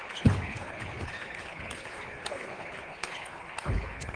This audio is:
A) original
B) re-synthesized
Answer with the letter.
B